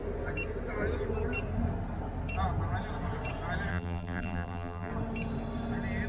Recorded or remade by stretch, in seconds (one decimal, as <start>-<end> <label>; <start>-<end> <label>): 0.0-3.7 recorded; 3.7-4.9 remade; 4.9-6.1 recorded